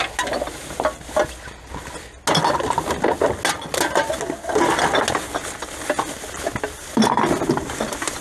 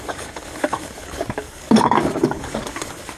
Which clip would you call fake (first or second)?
second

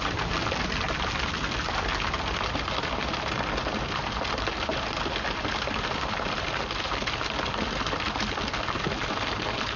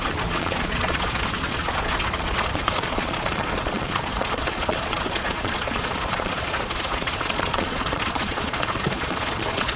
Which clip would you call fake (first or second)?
second